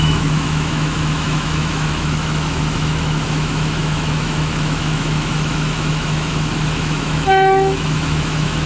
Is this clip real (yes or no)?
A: no